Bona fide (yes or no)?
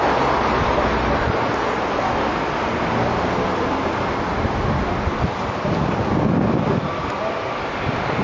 yes